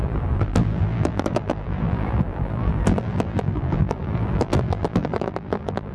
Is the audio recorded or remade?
remade